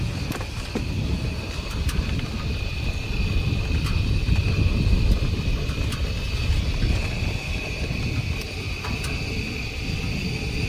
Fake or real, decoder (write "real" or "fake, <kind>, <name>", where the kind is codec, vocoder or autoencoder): real